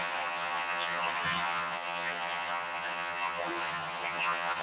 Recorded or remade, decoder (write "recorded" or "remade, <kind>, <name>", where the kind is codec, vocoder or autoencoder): remade, vocoder, HiFi-GAN